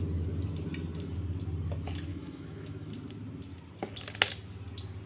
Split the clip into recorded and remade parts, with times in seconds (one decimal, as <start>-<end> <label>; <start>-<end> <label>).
0.0-2.1 recorded; 2.1-2.9 remade; 2.9-5.1 recorded